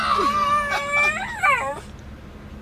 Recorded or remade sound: recorded